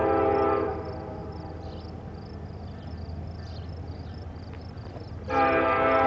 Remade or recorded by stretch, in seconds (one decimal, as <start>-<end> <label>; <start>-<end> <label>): 0.0-6.1 recorded